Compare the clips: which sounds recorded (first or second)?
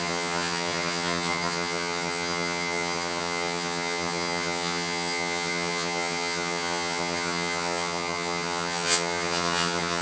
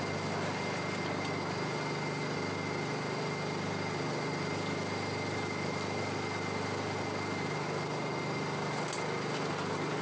second